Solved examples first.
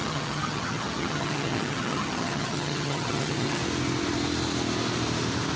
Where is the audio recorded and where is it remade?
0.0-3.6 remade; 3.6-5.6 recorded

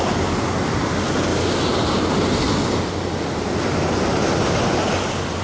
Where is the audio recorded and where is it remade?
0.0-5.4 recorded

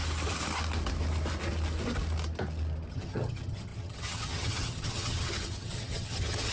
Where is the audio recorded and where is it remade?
0.0-2.9 recorded; 2.9-6.5 remade

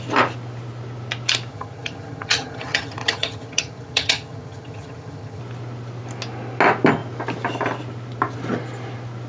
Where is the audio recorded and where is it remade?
0.0-1.5 recorded; 1.5-5.4 remade; 5.4-9.3 recorded

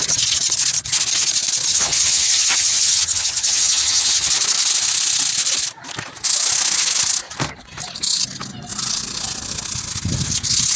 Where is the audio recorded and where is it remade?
0.0-1.7 recorded; 1.7-4.3 remade; 4.3-10.8 recorded

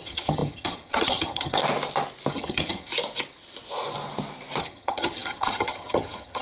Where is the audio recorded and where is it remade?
0.0-1.6 remade; 1.6-2.3 recorded; 2.3-2.9 remade; 2.9-4.6 recorded; 4.6-6.4 remade

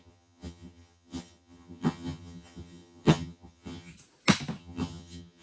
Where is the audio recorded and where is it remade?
0.0-3.9 remade; 3.9-4.6 recorded; 4.6-5.4 remade

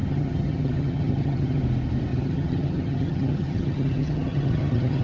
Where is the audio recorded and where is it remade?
0.0-1.6 remade; 1.6-2.1 recorded; 2.1-5.0 remade